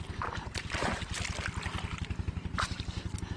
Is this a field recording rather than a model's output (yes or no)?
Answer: yes